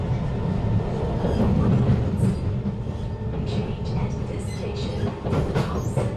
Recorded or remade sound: recorded